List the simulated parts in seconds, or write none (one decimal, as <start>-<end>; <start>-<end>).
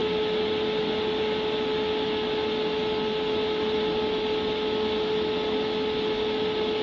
none